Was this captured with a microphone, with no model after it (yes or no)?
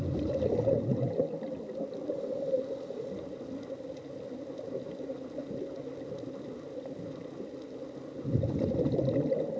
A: yes